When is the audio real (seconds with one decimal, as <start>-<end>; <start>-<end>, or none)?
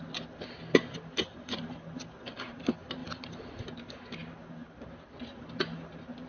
0.0-3.0; 3.6-4.2; 5.2-6.3